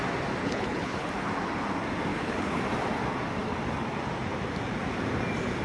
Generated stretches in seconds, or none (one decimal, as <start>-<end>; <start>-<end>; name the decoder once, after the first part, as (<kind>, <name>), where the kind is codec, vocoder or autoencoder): 0.4-1.1 (codec, HILCodec); 2.1-2.6